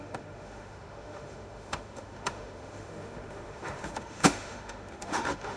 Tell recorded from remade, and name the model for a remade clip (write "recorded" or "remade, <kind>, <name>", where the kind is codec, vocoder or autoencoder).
remade, autoencoder, DAC-VAE